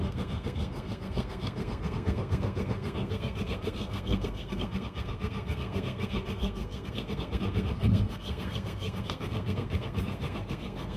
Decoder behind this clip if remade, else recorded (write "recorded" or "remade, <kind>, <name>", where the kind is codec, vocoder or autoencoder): remade, codec, SNAC